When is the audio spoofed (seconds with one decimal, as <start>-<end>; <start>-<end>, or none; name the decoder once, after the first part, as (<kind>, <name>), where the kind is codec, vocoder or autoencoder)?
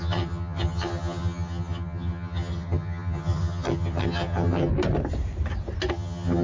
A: 0.0-4.7 (vocoder, HiFi-GAN); 5.9-6.4